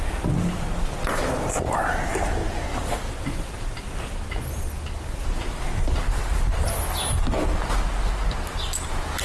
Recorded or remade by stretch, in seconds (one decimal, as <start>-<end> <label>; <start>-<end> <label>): 0.0-9.2 recorded